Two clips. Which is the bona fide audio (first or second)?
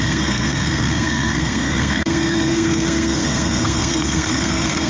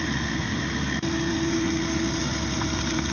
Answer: second